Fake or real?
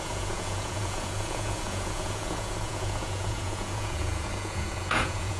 fake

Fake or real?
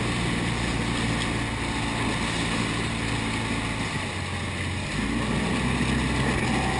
real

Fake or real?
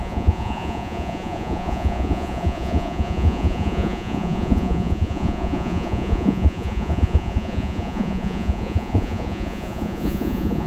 fake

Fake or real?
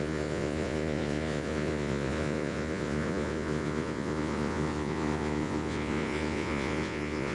fake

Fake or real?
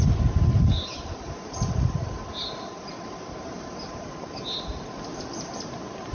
real